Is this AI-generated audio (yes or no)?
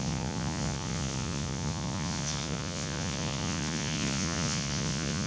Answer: yes